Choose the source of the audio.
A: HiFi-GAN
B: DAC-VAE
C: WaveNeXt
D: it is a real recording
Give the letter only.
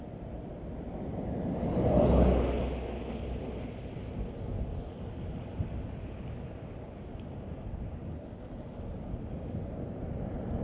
D